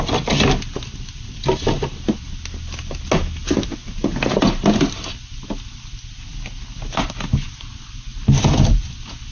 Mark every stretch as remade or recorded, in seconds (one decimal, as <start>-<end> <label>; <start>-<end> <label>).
0.0-9.3 recorded